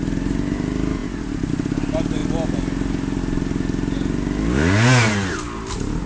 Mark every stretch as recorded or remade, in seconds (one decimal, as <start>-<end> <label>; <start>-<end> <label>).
0.0-6.1 recorded